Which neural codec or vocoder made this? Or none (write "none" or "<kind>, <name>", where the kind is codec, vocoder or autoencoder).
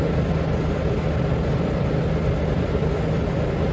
none